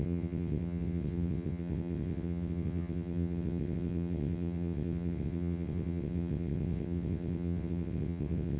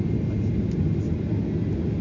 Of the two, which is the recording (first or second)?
second